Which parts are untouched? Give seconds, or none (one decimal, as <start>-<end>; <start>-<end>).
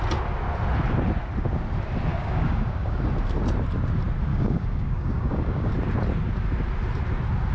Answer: 0.0-2.1; 3.1-4.3; 5.7-7.5